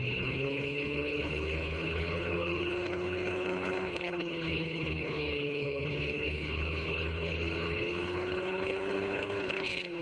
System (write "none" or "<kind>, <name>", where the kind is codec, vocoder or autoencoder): codec, HILCodec